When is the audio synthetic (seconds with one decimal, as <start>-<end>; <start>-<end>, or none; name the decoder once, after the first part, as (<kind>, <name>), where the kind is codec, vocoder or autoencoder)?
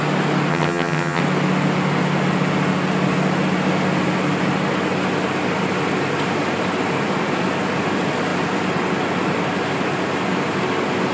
0.5-1.2 (vocoder, HiFi-GAN)